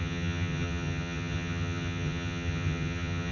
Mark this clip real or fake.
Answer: fake